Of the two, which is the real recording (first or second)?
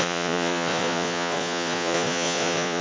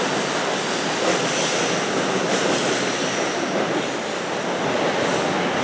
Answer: second